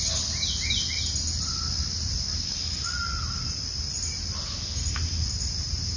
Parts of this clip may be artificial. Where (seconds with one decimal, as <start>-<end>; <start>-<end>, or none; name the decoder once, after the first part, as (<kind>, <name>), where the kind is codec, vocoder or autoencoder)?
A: none